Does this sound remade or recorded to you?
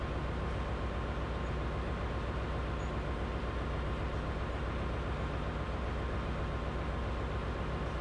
recorded